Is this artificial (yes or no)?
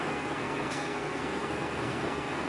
yes